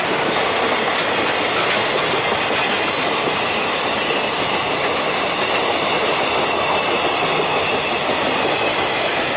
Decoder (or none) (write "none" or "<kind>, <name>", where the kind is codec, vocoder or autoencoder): none